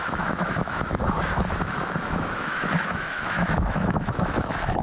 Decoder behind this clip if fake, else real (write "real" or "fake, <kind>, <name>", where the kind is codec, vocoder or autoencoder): fake, autoencoder, DAC-VAE